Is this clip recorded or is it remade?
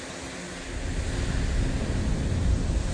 recorded